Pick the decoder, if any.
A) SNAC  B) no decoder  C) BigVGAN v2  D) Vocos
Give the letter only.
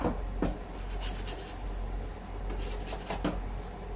B